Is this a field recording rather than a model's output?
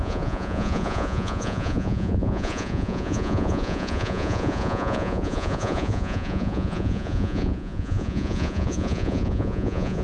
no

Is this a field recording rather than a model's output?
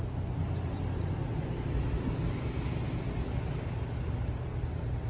yes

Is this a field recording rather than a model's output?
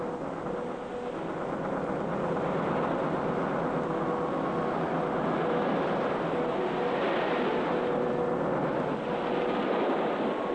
yes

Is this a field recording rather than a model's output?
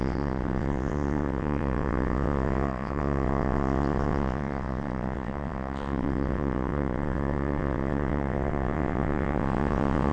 no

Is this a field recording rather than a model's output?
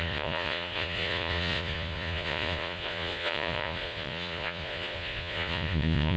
no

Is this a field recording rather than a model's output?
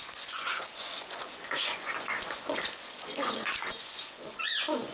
no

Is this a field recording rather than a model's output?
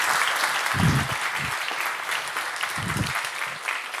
yes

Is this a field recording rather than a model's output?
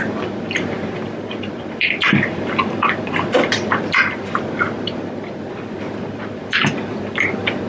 no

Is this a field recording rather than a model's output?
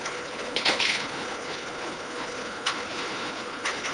no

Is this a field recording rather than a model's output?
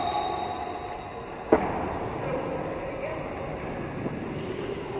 yes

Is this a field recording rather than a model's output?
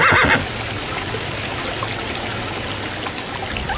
yes